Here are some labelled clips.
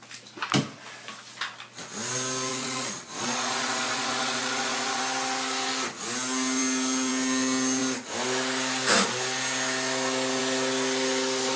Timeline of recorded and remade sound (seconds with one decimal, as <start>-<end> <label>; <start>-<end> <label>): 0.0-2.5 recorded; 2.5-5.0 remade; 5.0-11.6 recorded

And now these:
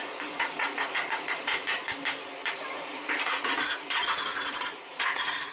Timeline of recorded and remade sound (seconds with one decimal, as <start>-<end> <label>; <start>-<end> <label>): 0.0-1.7 remade; 1.7-2.7 recorded; 2.7-5.5 remade

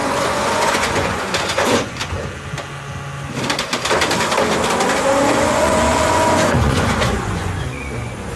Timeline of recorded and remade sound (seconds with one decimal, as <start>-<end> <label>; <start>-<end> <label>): 0.0-2.0 remade; 2.0-5.5 recorded; 5.5-8.4 remade